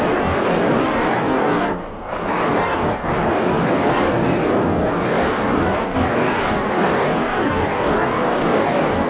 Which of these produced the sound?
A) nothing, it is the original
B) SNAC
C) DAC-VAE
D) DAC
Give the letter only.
D